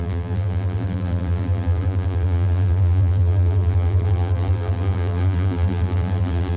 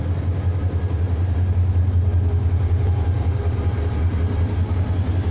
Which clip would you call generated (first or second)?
first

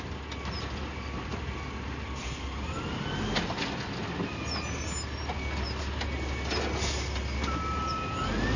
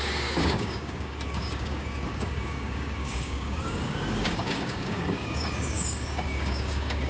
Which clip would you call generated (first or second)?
second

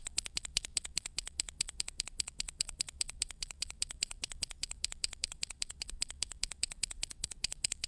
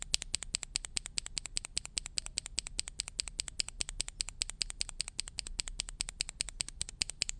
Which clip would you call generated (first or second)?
first